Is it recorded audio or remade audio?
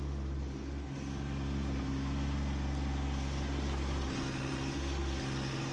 recorded